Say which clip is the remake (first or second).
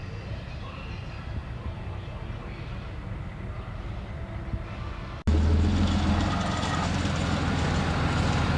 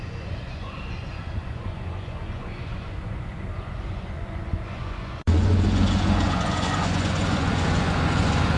second